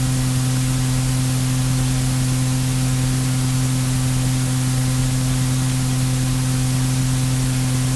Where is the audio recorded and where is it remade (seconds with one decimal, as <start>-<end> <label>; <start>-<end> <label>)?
0.0-8.0 recorded